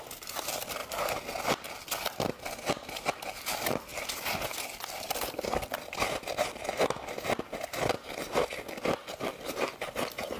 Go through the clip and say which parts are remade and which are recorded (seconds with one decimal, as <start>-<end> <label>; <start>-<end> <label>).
0.0-10.4 recorded